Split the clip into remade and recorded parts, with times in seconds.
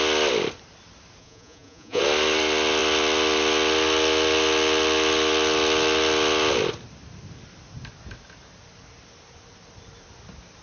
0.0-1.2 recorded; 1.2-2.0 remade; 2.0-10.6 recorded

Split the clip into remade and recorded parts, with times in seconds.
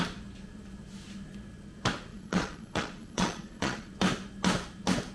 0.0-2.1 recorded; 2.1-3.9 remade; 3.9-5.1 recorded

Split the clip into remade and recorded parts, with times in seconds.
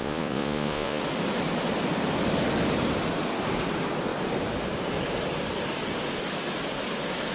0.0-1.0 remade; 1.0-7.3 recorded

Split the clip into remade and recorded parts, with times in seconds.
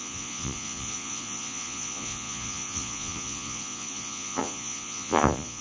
0.0-5.6 remade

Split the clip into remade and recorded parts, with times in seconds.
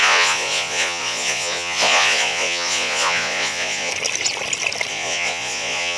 0.0-3.9 remade; 3.9-4.9 recorded; 4.9-6.0 remade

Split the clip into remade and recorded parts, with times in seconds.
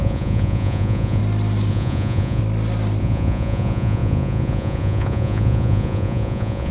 0.0-1.2 remade; 1.2-1.7 recorded; 1.7-2.4 remade; 2.4-3.0 recorded; 3.0-6.7 remade